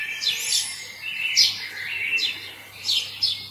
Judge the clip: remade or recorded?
recorded